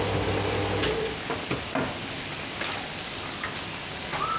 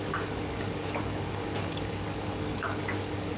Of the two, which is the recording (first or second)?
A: first